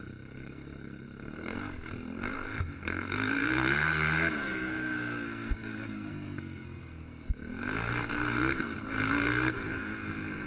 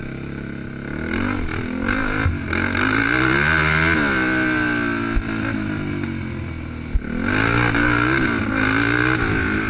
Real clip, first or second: second